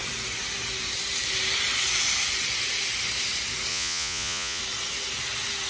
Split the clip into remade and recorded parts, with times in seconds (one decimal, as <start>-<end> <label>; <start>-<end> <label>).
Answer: 0.0-3.7 recorded; 3.7-4.6 remade; 4.6-5.7 recorded